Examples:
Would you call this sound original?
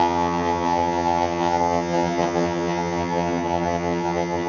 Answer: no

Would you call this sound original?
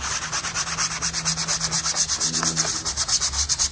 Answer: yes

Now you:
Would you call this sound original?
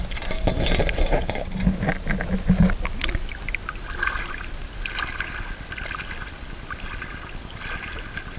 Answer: yes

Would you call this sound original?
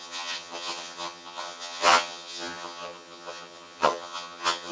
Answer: no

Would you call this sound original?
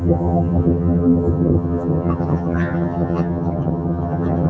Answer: no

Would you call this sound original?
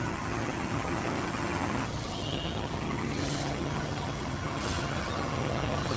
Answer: no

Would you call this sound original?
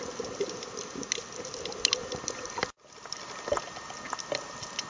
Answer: yes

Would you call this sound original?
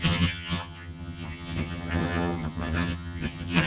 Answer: no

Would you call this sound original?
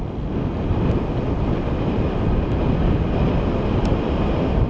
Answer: yes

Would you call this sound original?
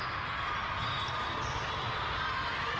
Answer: yes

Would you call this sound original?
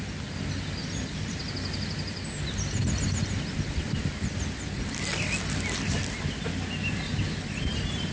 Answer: yes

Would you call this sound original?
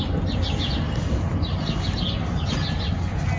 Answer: yes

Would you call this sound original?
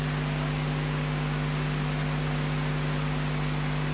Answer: yes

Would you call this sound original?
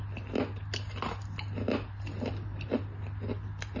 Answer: yes